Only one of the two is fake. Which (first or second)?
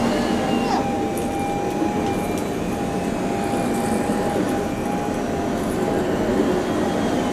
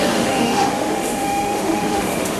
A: second